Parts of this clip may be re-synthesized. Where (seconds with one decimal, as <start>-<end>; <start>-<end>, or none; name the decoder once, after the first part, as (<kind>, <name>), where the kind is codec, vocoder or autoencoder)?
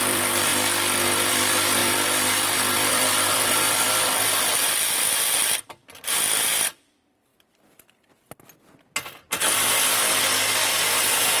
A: 0.0-0.5 (vocoder, BigVGAN v2); 1.3-7.3; 10.7-11.4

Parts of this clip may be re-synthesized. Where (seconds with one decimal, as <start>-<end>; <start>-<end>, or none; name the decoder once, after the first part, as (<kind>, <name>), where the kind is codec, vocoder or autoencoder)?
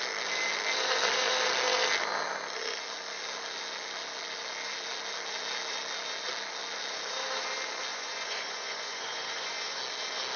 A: 7.9-9.8 (vocoder, Vocos)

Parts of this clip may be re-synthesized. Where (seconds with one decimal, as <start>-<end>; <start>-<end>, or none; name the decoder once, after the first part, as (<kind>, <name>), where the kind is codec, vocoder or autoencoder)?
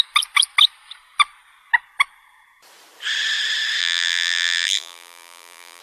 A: 3.8-5.8 (vocoder, BigVGAN v2)